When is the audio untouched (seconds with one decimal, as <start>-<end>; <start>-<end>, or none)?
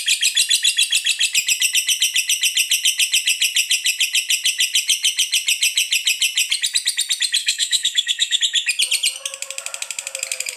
0.0-7.4; 8.4-10.6